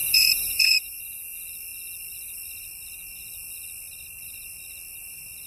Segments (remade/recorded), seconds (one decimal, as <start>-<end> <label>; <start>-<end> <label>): 0.0-1.0 remade; 1.0-5.5 recorded